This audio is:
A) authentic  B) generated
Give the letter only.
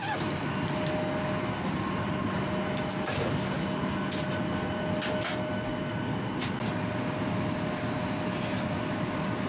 A